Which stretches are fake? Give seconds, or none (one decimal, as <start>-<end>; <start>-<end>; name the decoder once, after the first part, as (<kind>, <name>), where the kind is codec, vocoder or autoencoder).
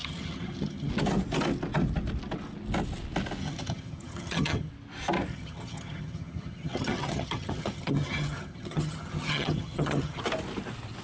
0.0-0.9 (vocoder, HiFi-GAN); 3.4-4.7; 5.3-10.2